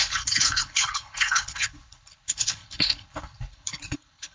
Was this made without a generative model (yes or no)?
no